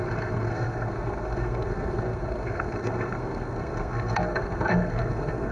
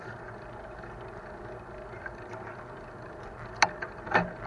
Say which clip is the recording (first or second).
second